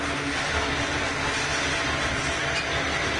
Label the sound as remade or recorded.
recorded